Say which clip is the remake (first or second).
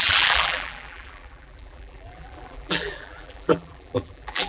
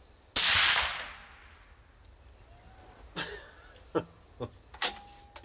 first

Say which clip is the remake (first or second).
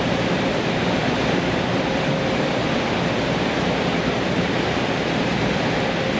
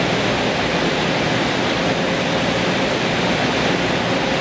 first